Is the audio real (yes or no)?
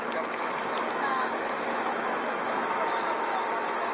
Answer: no